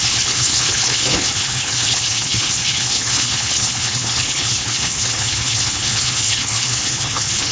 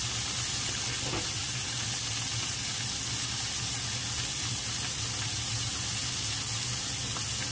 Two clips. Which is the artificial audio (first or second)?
first